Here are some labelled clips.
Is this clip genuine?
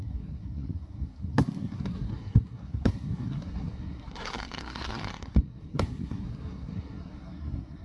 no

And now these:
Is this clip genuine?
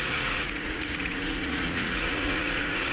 no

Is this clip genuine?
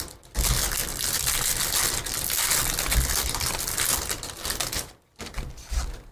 yes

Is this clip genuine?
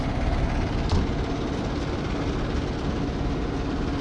yes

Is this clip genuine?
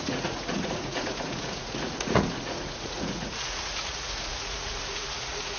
no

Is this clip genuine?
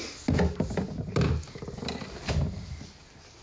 yes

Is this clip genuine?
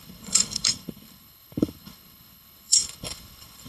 no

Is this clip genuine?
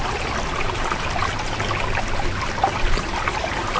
yes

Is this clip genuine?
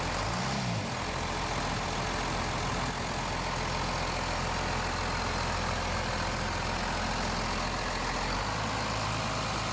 yes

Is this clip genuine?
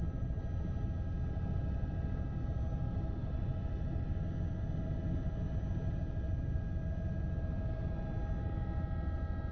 yes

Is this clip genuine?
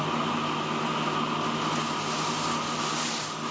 yes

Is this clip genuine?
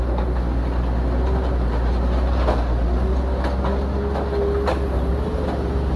yes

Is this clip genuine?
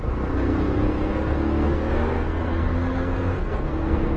no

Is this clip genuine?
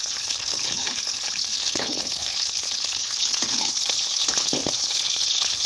no